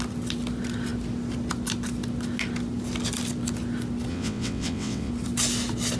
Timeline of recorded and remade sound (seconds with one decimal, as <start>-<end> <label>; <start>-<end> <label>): 0.0-4.1 recorded; 4.1-5.1 remade; 5.1-6.0 recorded